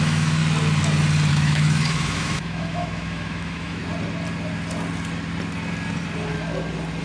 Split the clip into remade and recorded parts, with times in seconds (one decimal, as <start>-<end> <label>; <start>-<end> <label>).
0.0-0.4 remade; 0.4-1.3 recorded; 1.3-3.8 remade; 3.8-7.0 recorded

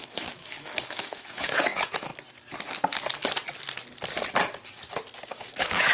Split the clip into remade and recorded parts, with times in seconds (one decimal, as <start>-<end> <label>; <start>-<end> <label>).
0.0-2.1 remade; 2.1-5.3 recorded; 5.3-5.9 remade